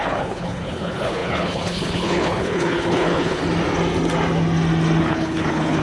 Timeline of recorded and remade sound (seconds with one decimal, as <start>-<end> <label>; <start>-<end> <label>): 0.0-3.4 remade; 3.4-5.0 recorded; 5.0-5.8 remade